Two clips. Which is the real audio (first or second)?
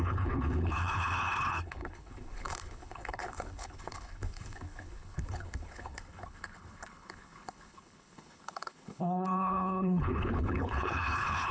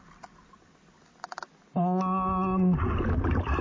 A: second